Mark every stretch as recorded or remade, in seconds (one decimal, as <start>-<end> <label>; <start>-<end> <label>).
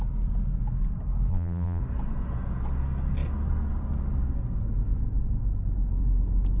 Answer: 0.0-1.3 recorded; 1.3-1.8 remade; 1.8-6.6 recorded